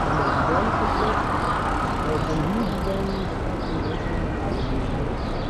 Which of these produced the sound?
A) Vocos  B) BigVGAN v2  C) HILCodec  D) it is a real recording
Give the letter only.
D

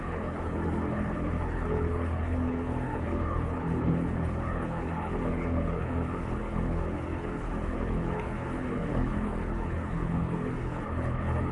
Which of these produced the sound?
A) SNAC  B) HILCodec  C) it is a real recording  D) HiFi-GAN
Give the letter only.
B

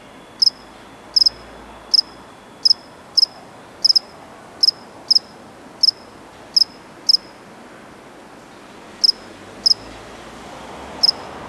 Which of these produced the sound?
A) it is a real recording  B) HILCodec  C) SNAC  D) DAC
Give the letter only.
A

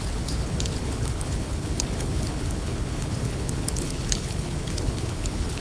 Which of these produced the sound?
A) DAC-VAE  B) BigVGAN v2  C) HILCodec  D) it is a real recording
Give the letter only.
C